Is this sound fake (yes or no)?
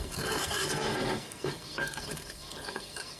yes